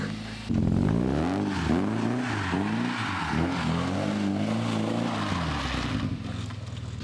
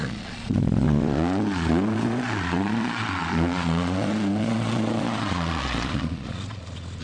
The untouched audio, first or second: first